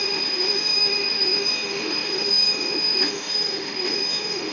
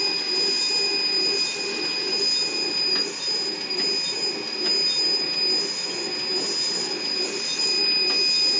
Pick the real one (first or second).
second